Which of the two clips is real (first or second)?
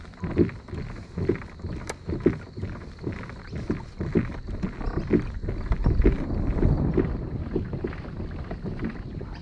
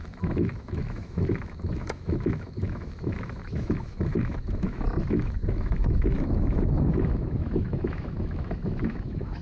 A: first